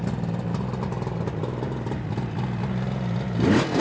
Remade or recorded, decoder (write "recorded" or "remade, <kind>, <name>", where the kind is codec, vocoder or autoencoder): recorded